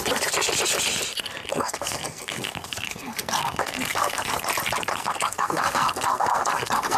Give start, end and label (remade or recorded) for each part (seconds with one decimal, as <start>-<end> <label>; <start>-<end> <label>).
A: 0.0-1.5 recorded; 1.5-4.5 remade; 4.5-4.9 recorded; 4.9-7.0 remade